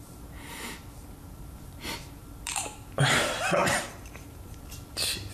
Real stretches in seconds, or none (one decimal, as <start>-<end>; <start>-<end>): none